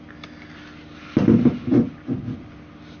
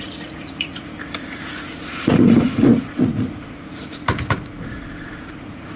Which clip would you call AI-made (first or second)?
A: second